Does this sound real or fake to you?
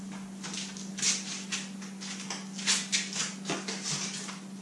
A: real